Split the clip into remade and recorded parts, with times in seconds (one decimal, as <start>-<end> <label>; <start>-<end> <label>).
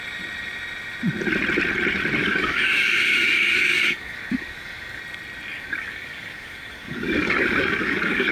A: 0.0-2.2 recorded; 2.2-5.0 remade; 5.0-5.5 recorded; 5.5-8.3 remade